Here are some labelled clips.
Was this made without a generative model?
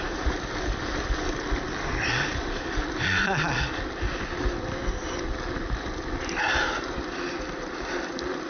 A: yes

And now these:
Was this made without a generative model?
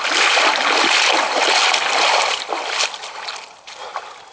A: yes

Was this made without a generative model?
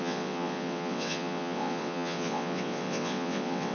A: no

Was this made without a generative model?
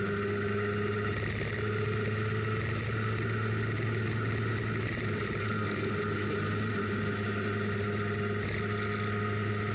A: yes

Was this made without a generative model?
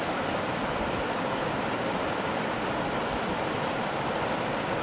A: yes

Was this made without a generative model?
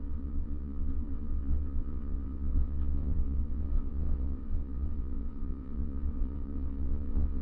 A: no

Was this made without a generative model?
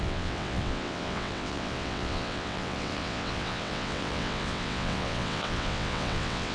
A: no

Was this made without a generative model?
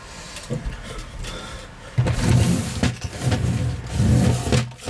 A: yes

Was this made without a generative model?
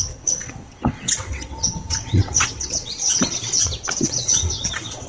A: no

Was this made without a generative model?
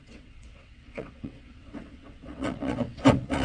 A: no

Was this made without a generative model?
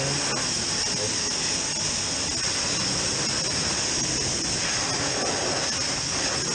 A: yes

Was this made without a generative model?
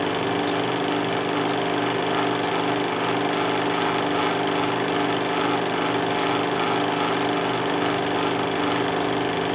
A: yes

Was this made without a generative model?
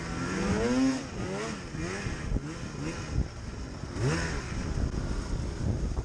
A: yes